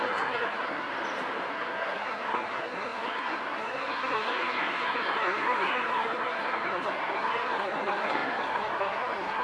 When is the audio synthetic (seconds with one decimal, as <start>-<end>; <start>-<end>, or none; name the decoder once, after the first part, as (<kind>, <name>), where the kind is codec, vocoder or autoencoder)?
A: 0.0-0.9 (codec, SNAC); 1.5-9.4